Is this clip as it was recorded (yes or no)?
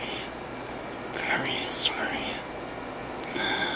yes